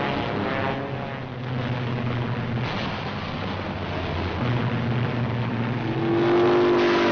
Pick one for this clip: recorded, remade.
recorded